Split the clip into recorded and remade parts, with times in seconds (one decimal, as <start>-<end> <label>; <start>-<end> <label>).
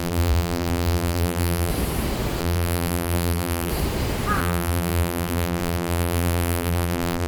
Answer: 0.0-1.7 remade; 1.7-2.4 recorded; 2.4-3.7 remade; 3.7-4.4 recorded; 4.4-7.3 remade